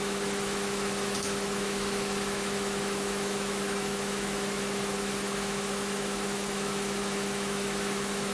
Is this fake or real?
fake